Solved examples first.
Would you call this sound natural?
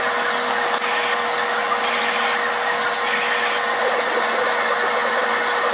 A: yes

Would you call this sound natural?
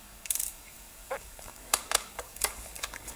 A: no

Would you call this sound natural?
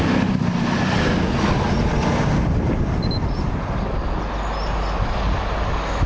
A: yes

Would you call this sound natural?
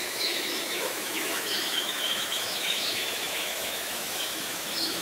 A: no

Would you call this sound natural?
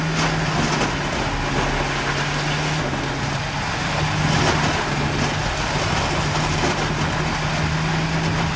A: yes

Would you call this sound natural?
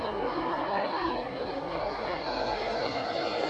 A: no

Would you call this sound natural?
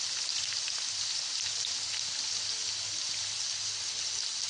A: yes